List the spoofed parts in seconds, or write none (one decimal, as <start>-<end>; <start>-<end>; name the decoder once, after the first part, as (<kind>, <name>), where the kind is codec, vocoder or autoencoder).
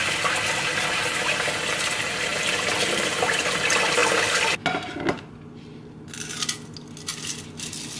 none